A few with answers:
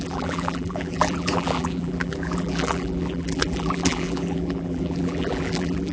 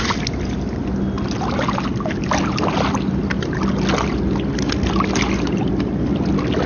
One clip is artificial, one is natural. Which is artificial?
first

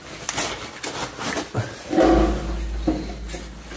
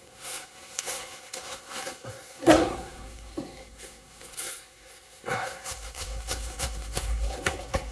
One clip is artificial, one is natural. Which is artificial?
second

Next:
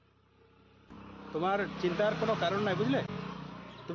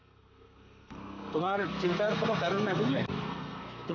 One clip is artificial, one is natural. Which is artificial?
second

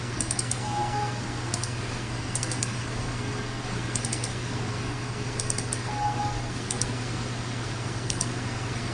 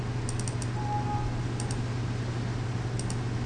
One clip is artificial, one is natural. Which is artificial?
first